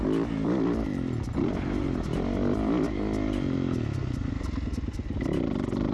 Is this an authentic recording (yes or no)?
yes